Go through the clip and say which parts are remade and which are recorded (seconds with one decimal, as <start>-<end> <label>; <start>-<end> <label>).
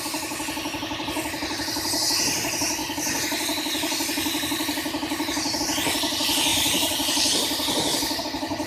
0.0-2.8 recorded; 2.8-5.6 remade; 5.6-6.5 recorded; 6.5-8.2 remade; 8.2-8.7 recorded